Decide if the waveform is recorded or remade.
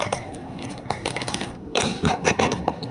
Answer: remade